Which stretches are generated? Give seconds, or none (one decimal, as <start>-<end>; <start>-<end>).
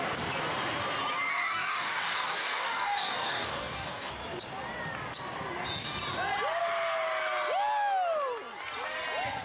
1.3-4.1